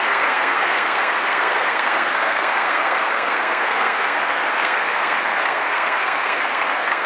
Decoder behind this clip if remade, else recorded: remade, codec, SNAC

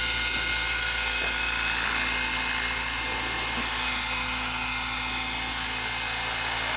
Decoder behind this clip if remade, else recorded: recorded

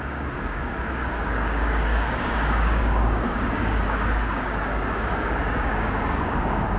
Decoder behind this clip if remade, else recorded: remade, codec, DAC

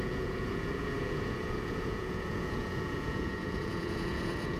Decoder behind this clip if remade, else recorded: remade, vocoder, Vocos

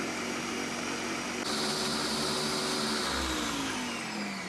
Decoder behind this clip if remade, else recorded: recorded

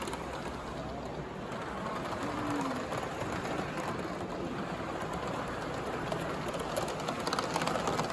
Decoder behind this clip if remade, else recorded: recorded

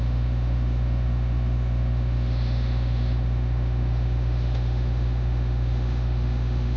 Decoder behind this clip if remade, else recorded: remade, autoencoder, DAC-VAE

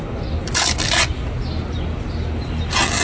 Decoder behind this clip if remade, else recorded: recorded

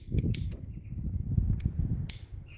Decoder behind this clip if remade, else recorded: recorded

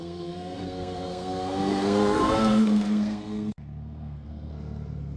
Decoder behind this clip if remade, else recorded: remade, codec, SNAC